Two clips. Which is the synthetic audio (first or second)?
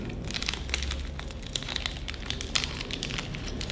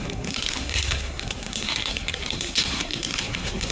second